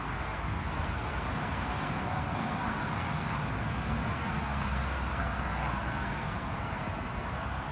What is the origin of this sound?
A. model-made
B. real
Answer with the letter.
A